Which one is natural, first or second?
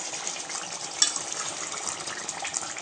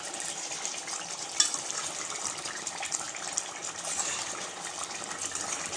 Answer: first